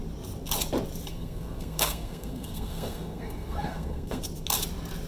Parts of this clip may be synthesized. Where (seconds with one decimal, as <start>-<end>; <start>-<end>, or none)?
1.1-4.2